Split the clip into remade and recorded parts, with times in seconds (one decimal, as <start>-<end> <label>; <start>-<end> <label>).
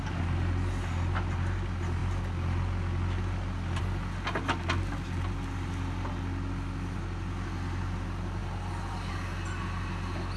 0.0-10.4 recorded